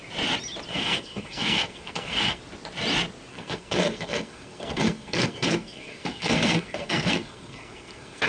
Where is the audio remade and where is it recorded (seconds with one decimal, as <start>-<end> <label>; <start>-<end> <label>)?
0.0-0.7 recorded; 0.7-2.4 remade; 2.4-3.3 recorded; 3.3-8.3 remade